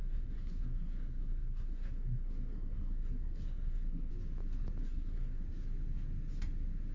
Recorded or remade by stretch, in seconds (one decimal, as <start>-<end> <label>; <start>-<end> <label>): 0.0-4.1 remade; 4.1-4.8 recorded; 4.8-5.4 remade; 5.4-6.9 recorded

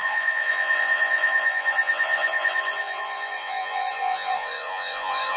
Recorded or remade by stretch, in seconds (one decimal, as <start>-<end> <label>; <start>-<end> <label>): 0.0-5.4 remade

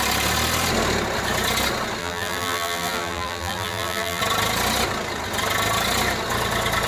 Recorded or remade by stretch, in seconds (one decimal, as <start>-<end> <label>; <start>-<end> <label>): 0.0-2.0 recorded; 2.0-4.2 remade; 4.2-6.9 recorded

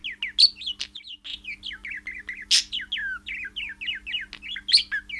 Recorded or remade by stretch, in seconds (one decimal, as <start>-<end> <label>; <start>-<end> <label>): 0.0-5.2 recorded

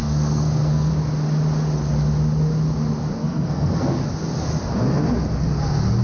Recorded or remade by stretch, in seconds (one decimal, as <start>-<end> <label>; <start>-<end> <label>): 0.0-0.9 remade; 0.9-3.2 recorded; 3.2-4.0 remade; 4.0-6.0 recorded

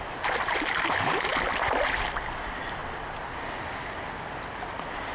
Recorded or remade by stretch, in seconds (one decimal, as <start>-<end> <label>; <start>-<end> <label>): 0.0-5.1 recorded

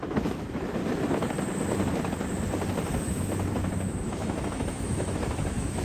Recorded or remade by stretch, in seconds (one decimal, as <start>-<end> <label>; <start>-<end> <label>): 0.0-0.8 remade; 0.8-3.0 recorded; 3.0-5.8 remade